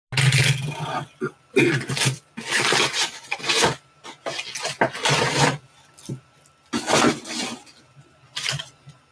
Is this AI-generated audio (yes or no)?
no